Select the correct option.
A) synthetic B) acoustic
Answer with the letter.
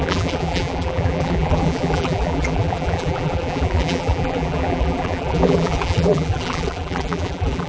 A